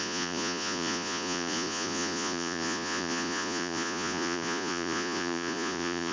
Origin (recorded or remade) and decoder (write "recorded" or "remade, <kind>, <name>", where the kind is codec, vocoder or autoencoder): remade, vocoder, Vocos